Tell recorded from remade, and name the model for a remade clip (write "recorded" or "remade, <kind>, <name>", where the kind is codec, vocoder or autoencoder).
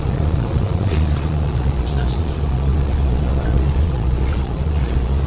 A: remade, vocoder, Vocos